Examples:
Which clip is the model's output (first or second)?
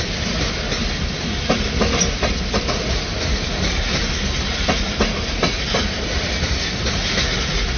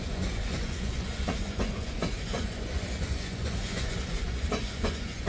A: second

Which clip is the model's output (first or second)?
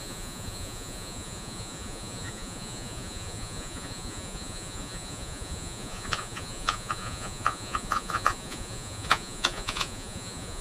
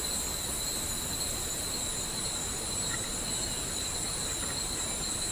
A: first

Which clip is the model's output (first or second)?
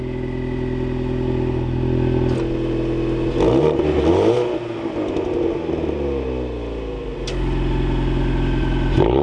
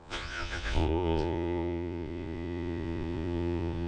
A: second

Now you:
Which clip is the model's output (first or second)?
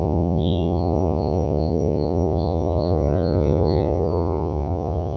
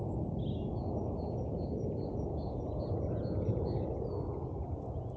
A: first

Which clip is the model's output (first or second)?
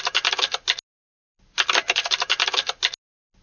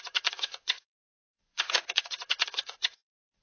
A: second